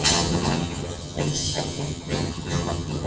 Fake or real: fake